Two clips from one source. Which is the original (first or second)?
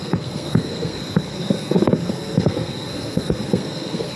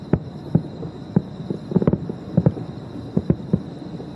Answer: second